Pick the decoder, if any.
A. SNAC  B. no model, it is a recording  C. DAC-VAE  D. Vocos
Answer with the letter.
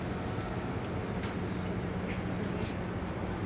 B